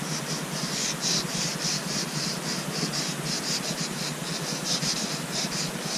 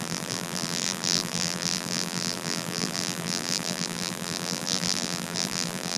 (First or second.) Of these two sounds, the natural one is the first